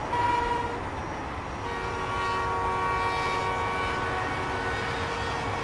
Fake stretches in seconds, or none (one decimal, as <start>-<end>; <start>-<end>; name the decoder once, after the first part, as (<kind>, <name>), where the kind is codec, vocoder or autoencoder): none